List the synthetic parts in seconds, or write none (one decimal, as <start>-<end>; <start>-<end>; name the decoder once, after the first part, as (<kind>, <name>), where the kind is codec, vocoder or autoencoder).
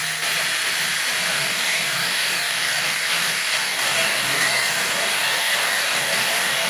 1.3-6.7 (codec, DAC)